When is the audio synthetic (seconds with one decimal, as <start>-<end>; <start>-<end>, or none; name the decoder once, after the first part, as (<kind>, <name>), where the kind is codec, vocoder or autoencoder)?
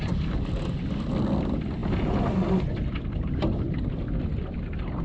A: none